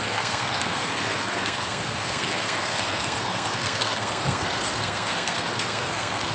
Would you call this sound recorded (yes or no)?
no